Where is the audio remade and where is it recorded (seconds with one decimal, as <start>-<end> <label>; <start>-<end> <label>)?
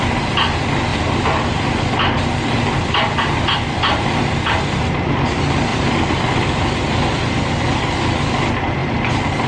0.0-0.9 recorded; 0.9-1.7 remade; 1.7-5.7 recorded; 5.7-6.4 remade; 6.4-8.8 recorded; 8.8-9.5 remade